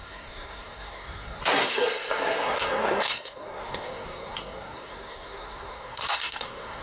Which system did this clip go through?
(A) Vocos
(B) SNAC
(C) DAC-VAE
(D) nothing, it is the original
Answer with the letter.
B